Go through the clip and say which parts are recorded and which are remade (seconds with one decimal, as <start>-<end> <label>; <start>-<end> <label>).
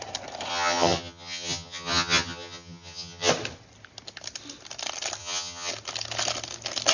0.0-0.5 recorded; 0.5-3.3 remade; 3.3-5.2 recorded; 5.2-5.7 remade; 5.7-6.9 recorded